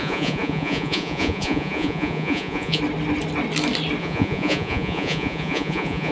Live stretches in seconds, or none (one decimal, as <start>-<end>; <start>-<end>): 2.8-4.0